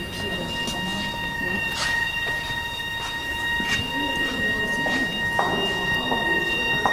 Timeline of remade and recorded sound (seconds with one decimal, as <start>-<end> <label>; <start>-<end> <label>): 0.0-1.7 recorded; 1.7-2.8 remade; 2.8-3.2 recorded; 3.2-4.6 remade; 4.6-6.9 recorded